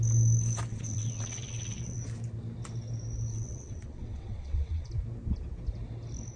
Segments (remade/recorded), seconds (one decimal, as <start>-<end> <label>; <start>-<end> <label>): 0.0-0.7 recorded; 0.7-2.0 remade; 2.0-3.3 recorded; 3.3-4.9 remade; 4.9-6.4 recorded